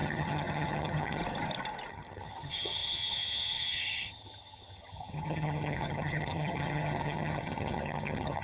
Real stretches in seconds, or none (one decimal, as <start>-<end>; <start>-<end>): 1.2-1.9